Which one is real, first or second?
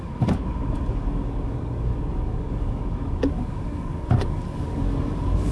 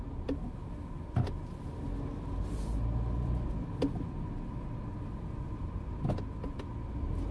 second